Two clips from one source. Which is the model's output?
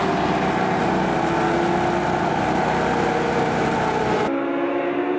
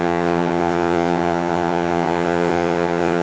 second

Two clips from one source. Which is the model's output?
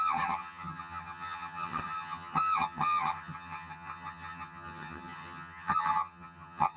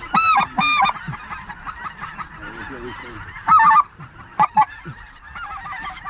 first